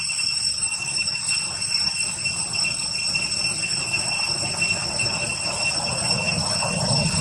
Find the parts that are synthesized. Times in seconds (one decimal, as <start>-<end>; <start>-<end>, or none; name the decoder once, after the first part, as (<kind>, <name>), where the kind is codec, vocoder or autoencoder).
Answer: 0.5-1.2 (autoencoder, DAC-VAE)